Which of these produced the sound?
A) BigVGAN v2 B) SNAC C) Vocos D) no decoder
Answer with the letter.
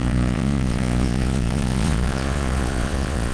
C